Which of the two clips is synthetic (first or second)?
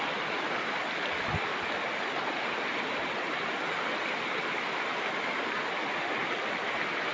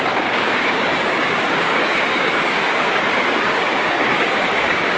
second